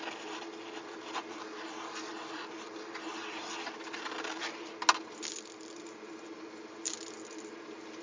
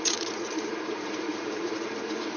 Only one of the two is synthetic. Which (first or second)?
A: second